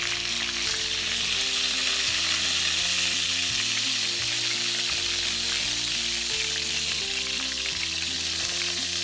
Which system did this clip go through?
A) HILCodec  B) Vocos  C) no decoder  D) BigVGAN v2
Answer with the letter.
C